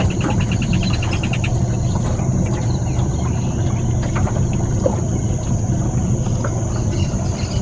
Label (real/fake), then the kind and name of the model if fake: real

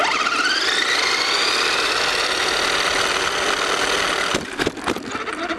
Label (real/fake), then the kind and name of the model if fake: real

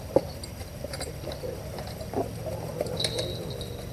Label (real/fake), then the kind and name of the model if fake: real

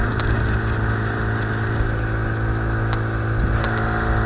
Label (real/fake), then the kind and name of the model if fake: real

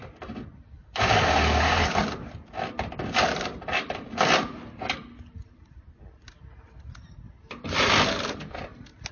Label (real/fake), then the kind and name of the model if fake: real